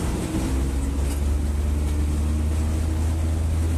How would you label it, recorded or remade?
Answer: recorded